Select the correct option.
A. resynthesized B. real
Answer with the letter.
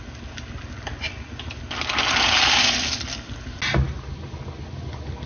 B